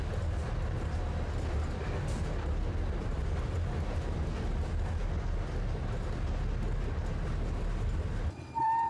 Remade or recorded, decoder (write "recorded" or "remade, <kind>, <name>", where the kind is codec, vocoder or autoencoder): recorded